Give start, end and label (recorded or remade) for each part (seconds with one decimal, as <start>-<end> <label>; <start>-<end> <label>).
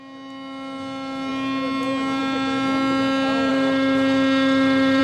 0.0-3.5 recorded; 3.5-5.0 remade